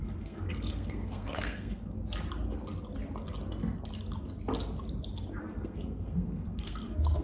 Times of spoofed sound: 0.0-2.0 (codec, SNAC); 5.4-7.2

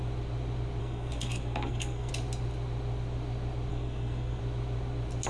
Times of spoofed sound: 0.8-2.1 (codec, SNAC); 3.7-4.4

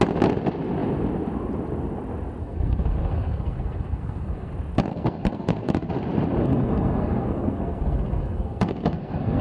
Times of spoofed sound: 2.4-4.5 (codec, SNAC); 4.9-5.9; 6.4-9.4